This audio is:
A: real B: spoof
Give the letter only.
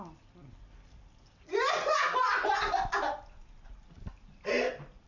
A